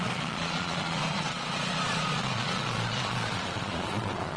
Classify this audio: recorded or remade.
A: remade